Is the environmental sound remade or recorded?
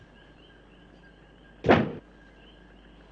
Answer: recorded